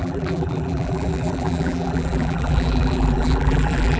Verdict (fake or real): fake